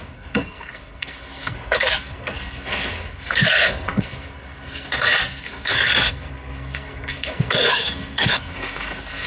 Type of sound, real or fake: fake